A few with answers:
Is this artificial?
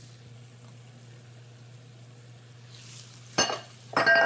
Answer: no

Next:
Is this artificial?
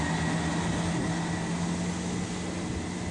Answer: no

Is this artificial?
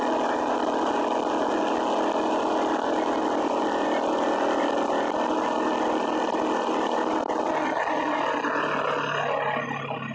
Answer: no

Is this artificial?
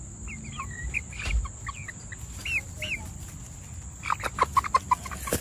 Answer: no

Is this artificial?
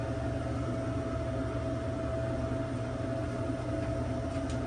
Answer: no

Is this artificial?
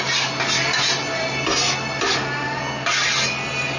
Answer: no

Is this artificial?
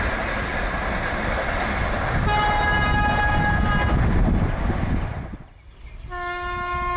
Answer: no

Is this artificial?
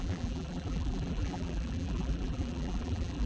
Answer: yes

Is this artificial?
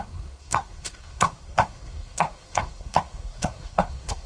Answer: yes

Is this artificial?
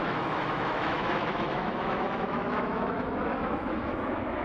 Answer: yes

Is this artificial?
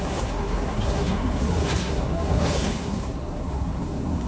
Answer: yes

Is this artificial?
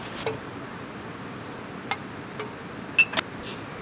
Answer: no